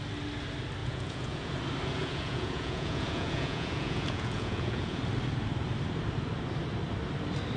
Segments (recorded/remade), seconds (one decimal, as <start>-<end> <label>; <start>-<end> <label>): 0.0-0.8 recorded; 0.8-1.5 remade; 1.5-2.0 recorded; 2.0-5.0 remade; 5.0-7.6 recorded